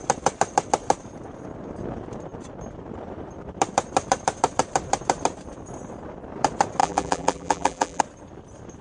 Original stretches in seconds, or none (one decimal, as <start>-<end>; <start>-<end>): 0.0-6.8; 8.0-8.8